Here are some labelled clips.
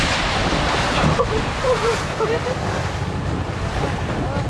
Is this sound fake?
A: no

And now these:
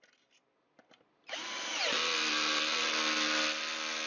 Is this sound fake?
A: no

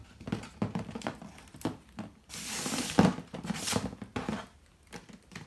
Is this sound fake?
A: no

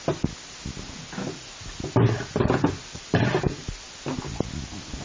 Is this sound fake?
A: no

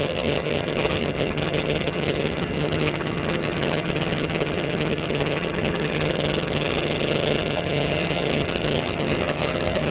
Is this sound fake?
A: yes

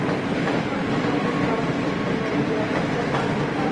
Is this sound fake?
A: no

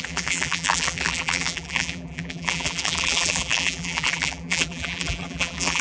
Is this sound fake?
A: yes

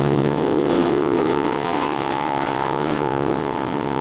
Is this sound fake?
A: yes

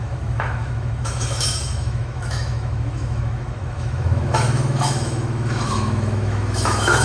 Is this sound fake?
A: yes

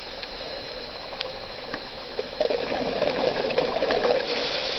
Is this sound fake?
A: yes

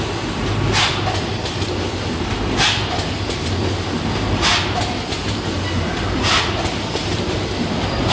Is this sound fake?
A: no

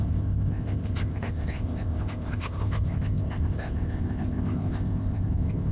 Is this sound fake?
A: yes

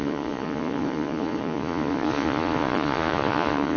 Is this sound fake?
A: yes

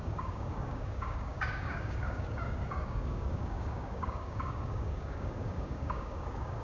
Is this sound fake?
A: yes